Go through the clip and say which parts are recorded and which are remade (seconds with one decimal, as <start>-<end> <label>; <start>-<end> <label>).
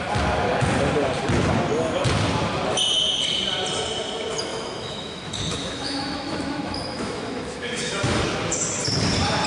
0.0-4.5 recorded; 4.5-8.2 remade; 8.2-9.5 recorded